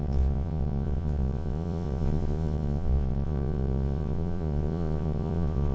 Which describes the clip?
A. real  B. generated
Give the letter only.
B